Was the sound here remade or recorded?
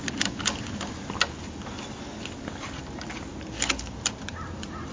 recorded